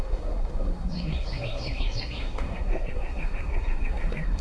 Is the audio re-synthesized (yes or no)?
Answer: yes